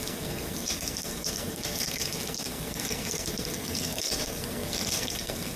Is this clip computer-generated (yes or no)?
yes